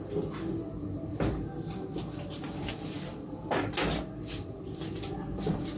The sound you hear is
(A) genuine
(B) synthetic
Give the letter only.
A